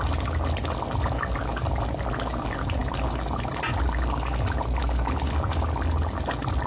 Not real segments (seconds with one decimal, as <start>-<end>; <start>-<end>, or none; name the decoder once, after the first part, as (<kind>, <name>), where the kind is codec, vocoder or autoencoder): none